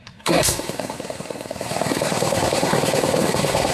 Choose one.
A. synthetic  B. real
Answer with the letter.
A